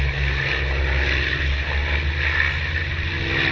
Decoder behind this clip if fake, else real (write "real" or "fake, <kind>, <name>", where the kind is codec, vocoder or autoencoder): real